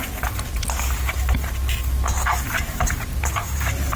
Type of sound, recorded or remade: recorded